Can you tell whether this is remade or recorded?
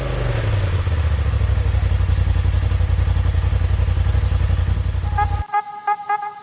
recorded